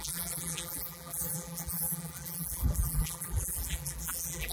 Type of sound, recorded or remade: remade